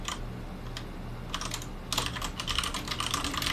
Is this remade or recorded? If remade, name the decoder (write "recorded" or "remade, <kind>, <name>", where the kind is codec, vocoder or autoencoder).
recorded